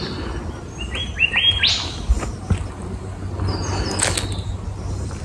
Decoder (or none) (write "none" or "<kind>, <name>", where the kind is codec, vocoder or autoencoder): none